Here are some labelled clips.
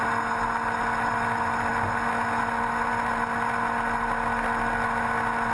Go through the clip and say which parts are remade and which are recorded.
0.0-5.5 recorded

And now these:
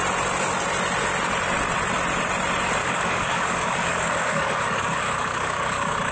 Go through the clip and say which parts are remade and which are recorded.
0.0-2.8 recorded; 2.8-6.1 remade

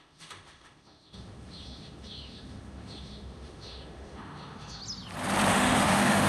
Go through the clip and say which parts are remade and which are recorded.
0.0-4.8 remade; 4.8-5.5 recorded; 5.5-6.3 remade

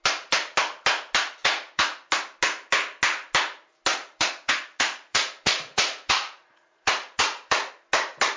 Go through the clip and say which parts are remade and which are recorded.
0.0-1.4 recorded; 1.4-2.1 remade; 2.1-3.9 recorded; 3.9-7.7 remade; 7.7-8.4 recorded

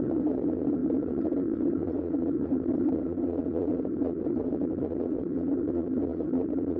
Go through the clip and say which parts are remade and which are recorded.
0.0-6.8 remade

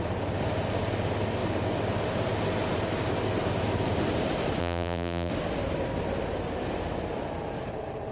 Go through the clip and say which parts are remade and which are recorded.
0.0-4.6 recorded; 4.6-5.3 remade; 5.3-8.1 recorded

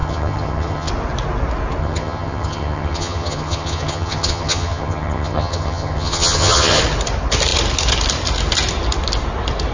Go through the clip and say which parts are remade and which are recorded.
0.0-0.9 remade; 0.9-1.8 recorded; 1.8-6.8 remade; 6.8-9.7 recorded

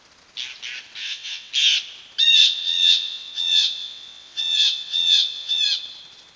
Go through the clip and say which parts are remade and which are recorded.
0.0-1.0 recorded; 1.0-1.5 remade; 1.5-2.4 recorded; 2.4-5.6 remade; 5.6-6.4 recorded